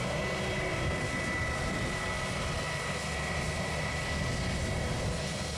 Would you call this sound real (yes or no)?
yes